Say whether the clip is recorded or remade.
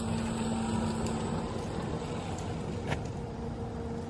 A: recorded